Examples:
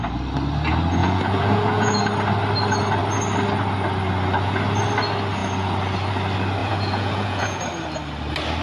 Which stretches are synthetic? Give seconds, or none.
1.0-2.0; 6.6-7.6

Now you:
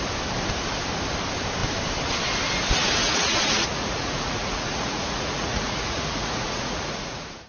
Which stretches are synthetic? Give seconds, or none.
3.0-7.5